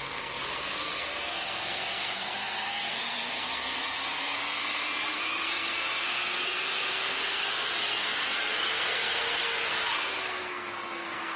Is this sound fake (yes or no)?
yes